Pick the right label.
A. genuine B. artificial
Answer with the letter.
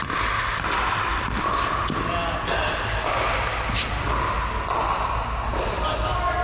A